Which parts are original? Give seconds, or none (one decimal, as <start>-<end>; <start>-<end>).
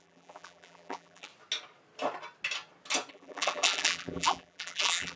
1.3-3.1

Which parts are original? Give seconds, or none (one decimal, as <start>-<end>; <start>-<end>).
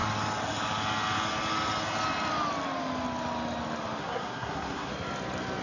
0.0-4.0; 4.9-5.6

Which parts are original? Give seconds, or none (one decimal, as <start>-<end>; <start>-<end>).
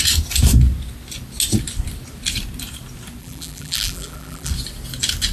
0.0-3.2; 4.5-5.3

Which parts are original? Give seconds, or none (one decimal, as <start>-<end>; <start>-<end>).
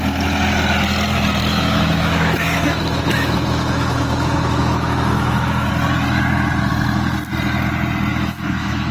0.0-1.5; 5.7-8.1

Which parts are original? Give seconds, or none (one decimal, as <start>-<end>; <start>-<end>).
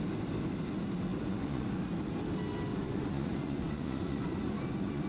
0.0-1.1; 1.8-2.7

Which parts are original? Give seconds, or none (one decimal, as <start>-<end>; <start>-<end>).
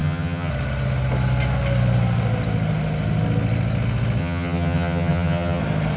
0.5-4.2; 5.6-6.0